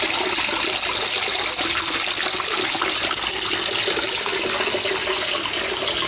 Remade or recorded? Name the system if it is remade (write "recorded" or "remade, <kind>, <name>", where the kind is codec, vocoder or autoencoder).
recorded